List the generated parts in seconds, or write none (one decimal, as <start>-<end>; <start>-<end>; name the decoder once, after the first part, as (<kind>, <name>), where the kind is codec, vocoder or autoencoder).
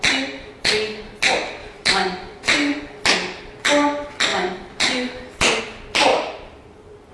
1.6-2.8 (vocoder, BigVGAN v2); 6.1-7.1